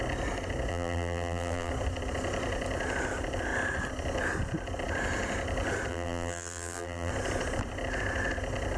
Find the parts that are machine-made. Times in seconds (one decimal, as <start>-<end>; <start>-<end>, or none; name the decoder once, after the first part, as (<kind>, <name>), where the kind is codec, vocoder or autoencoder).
0.7-1.7 (vocoder, BigVGAN v2); 5.9-7.1